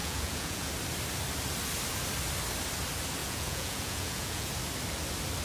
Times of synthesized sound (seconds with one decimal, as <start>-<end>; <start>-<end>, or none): 0.0-0.7; 3.2-4.5